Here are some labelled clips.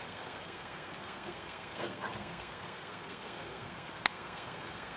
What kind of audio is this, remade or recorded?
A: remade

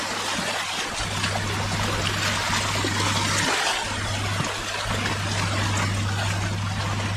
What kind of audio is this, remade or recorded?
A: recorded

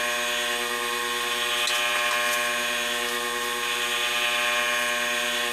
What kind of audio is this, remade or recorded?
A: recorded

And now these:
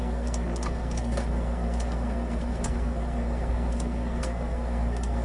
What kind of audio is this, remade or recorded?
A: remade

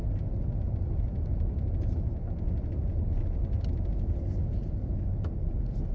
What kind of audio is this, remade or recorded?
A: recorded